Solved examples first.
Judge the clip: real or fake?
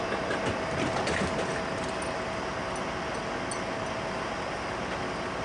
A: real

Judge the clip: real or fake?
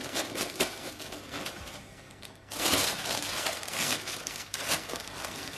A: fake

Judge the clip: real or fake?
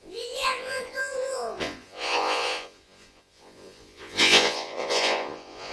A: fake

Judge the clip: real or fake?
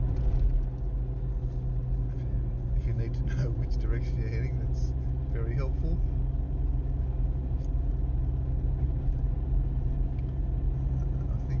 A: real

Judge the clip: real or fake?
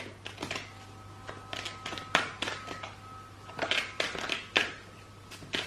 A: real